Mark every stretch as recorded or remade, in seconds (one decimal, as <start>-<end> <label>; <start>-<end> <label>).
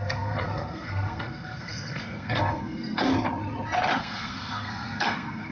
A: 0.0-3.1 remade; 3.1-4.0 recorded; 4.0-5.5 remade